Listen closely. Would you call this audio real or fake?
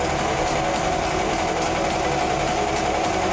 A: real